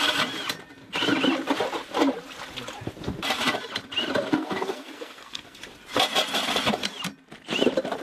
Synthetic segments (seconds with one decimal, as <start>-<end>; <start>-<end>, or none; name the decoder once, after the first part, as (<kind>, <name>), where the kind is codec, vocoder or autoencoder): 4.2-5.6 (codec, SNAC)